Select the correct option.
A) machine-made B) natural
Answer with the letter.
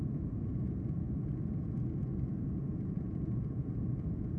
A